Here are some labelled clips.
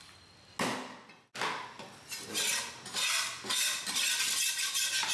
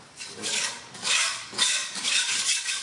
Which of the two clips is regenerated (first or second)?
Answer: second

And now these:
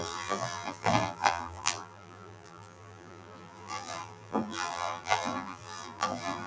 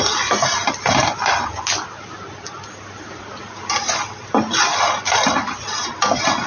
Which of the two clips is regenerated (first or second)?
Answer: first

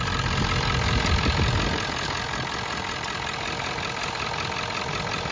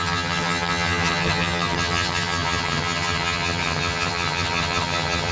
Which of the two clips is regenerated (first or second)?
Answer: second